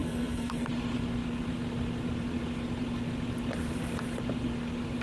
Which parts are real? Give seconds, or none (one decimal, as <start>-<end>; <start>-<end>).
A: 0.7-5.0